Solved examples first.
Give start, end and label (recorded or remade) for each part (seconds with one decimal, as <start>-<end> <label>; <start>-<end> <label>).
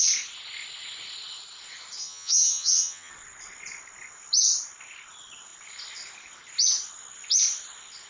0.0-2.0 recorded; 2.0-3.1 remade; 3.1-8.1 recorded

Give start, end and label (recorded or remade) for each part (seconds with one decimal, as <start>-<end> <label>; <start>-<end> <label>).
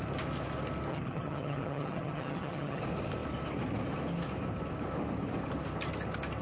0.0-0.9 recorded; 0.9-2.8 remade; 2.8-6.4 recorded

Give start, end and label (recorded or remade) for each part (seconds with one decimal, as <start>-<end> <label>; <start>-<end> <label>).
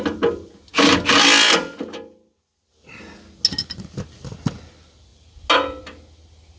0.0-6.6 recorded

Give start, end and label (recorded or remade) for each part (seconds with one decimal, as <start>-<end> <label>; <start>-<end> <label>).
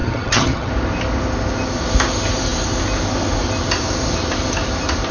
0.0-0.7 remade; 0.7-5.1 recorded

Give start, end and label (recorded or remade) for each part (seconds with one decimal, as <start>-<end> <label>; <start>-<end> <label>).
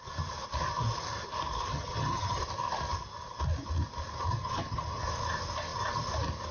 0.0-1.7 recorded; 1.7-2.4 remade; 2.4-4.3 recorded; 4.3-5.0 remade; 5.0-6.5 recorded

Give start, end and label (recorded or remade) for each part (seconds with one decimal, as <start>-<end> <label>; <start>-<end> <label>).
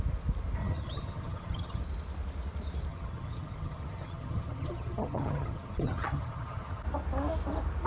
0.0-0.6 recorded; 0.6-1.8 remade; 1.8-2.9 recorded; 2.9-6.8 remade; 6.8-7.9 recorded